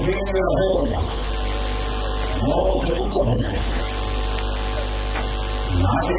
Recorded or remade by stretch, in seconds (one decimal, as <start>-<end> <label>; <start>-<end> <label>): 0.0-0.7 recorded; 0.7-1.3 remade; 1.3-2.6 recorded; 2.6-3.8 remade; 3.8-6.2 recorded